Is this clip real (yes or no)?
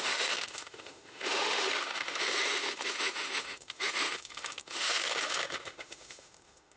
no